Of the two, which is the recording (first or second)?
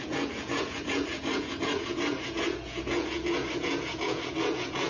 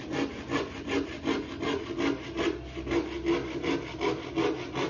second